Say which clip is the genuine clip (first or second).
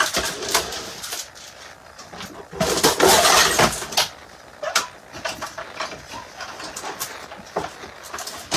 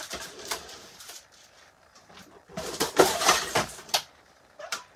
first